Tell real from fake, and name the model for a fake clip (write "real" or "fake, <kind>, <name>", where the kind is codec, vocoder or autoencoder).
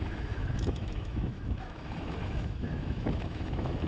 fake, autoencoder, DAC-VAE